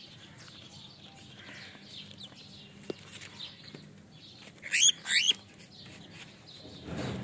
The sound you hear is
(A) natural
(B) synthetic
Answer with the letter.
A